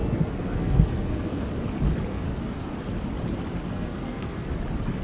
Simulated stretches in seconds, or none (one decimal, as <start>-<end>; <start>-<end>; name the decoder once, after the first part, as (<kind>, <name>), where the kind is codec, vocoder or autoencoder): 0.0-1.5 (codec, SNAC); 2.1-2.7; 3.7-4.5